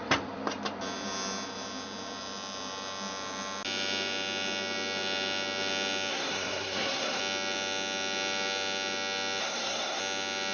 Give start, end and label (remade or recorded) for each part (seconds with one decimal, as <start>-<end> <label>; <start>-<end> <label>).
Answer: 0.0-6.1 recorded; 6.1-7.2 remade; 7.2-9.4 recorded; 9.4-10.0 remade; 10.0-10.5 recorded